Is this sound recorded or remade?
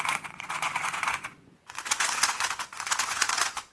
remade